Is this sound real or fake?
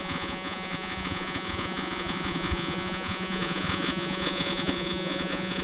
fake